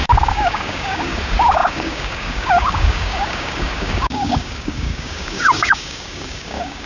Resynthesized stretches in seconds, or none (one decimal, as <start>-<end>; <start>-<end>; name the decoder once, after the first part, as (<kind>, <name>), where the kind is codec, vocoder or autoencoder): 0.0-6.9 (codec, DAC)